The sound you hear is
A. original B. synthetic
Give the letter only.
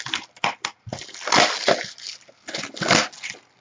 A